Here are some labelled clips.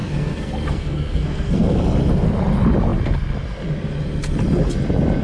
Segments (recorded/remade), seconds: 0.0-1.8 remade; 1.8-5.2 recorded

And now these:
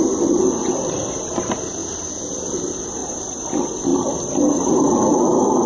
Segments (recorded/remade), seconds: 0.0-5.7 recorded

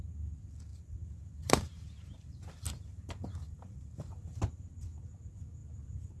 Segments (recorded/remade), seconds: 0.0-0.7 recorded; 0.7-4.4 remade; 4.4-6.2 recorded